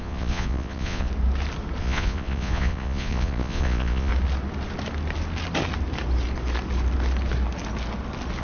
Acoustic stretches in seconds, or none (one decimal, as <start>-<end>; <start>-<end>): 1.1-1.8; 4.1-8.4